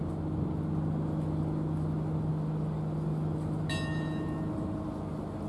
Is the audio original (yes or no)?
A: yes